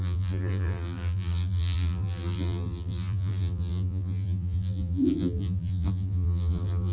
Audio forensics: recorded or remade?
remade